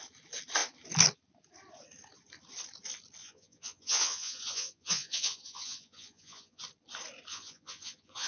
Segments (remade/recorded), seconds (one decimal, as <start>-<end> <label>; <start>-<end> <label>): 0.0-3.2 recorded; 3.2-6.6 remade; 6.6-7.3 recorded; 7.3-8.3 remade